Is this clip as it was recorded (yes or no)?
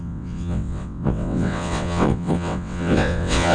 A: no